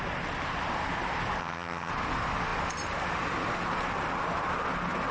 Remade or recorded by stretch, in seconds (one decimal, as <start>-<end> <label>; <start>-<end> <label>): 0.0-1.4 recorded; 1.4-1.9 remade; 1.9-5.1 recorded